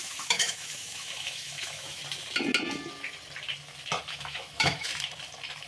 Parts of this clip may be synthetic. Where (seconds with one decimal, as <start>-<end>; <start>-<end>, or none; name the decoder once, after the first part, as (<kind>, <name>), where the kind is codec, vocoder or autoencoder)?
0.0-2.0 (autoencoder, DAC-VAE); 4.1-4.9